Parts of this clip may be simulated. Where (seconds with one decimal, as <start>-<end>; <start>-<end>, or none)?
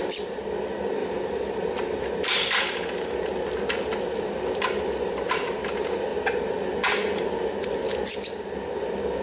1.0-1.5